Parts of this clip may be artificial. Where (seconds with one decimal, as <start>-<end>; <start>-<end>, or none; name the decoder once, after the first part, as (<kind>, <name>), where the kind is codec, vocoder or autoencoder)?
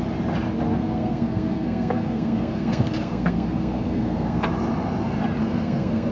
0.8-4.5 (codec, SNAC); 5.4-6.1